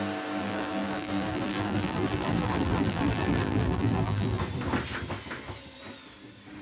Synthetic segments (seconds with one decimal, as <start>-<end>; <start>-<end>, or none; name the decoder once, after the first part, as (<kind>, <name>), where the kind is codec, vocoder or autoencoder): 0.4-4.4 (vocoder, BigVGAN v2)